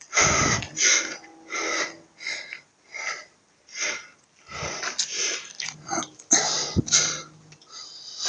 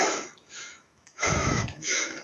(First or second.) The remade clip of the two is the second